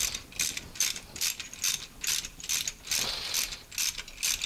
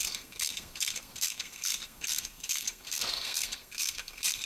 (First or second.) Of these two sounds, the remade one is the second